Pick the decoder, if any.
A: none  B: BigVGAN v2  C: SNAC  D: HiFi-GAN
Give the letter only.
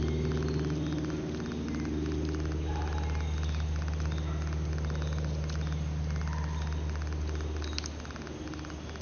A